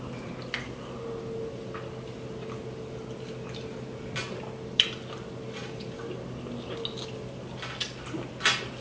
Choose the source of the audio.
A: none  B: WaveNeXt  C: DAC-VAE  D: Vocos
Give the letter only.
A